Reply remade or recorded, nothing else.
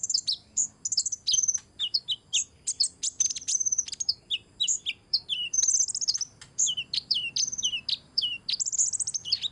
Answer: recorded